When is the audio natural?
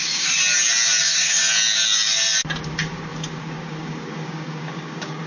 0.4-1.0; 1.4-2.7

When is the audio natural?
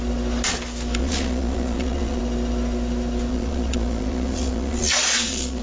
0.0-1.0; 2.2-3.3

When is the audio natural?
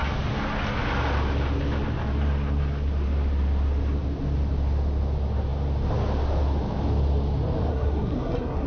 0.0-7.7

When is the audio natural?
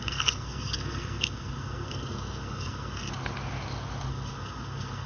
3.1-4.1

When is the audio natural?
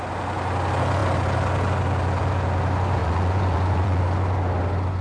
0.0-3.0; 4.0-5.0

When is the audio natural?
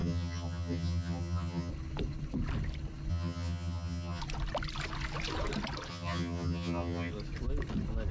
1.7-3.1; 4.2-5.9; 7.1-8.1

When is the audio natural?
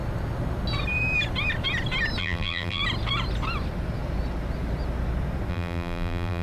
0.0-2.2; 2.8-5.5